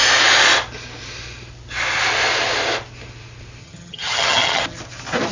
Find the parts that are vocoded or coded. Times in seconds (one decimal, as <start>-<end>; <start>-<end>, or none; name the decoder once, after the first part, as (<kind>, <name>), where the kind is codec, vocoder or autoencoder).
3.6-4.6 (vocoder, HiFi-GAN)